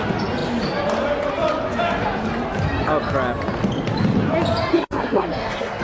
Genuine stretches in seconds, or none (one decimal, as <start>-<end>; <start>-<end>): 0.0-4.7